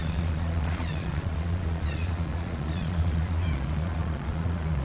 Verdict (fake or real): fake